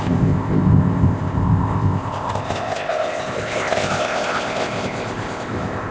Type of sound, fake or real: fake